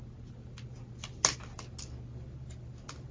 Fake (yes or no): no